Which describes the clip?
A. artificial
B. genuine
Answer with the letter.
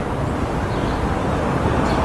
B